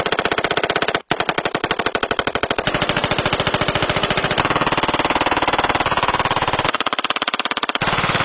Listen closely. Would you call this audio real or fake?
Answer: real